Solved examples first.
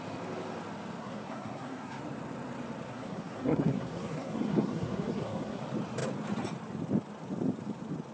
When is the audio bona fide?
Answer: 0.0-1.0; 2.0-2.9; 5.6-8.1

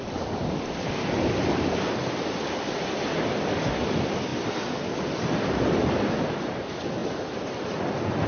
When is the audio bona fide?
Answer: 0.0-8.3

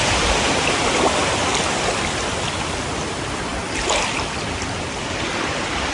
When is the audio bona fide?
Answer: 3.5-4.4

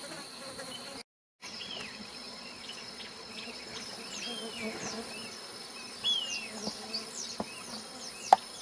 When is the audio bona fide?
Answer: 0.0-1.4; 3.8-8.6

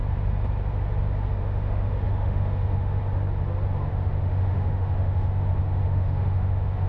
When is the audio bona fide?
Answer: 0.0-1.4; 3.0-3.9

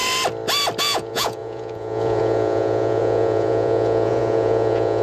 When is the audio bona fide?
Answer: 0.0-0.8

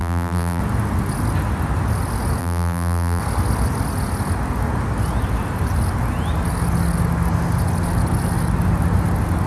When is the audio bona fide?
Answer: 0.6-2.4; 3.2-9.5